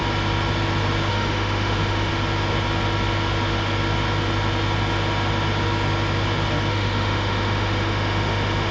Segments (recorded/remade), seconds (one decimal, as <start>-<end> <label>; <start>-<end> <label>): 0.0-1.1 recorded; 1.1-2.1 remade; 2.1-6.7 recorded; 6.7-8.7 remade